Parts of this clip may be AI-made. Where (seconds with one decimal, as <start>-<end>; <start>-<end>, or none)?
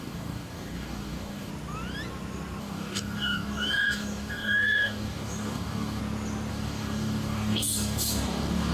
0.0-1.5; 2.6-6.0; 6.5-8.7